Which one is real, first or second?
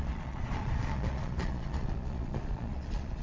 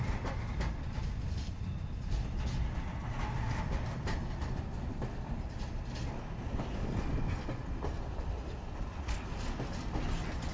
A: second